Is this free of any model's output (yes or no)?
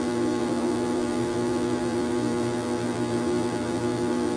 no